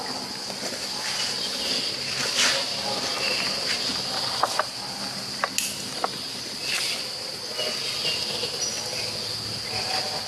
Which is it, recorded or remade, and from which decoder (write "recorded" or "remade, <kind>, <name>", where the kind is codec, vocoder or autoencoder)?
recorded